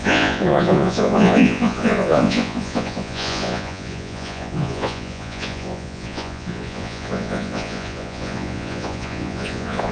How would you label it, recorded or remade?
remade